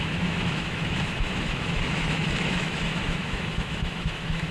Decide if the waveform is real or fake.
fake